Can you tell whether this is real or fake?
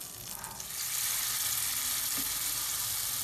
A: real